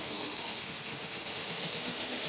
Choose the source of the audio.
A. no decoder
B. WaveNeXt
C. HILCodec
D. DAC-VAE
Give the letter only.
D